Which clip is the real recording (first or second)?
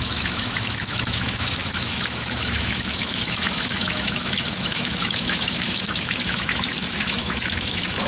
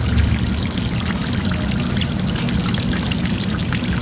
second